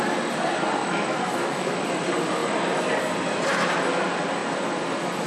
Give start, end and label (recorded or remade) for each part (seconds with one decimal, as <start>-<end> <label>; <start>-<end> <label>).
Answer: 0.0-0.8 recorded; 0.8-1.8 remade; 1.8-5.3 recorded